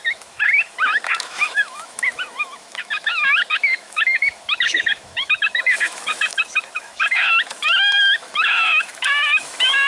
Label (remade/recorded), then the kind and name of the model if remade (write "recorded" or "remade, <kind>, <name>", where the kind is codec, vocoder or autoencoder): remade, autoencoder, DAC-VAE